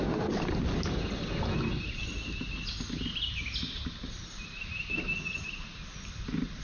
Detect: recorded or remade recorded